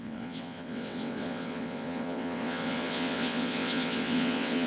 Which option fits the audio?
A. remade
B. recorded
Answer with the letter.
A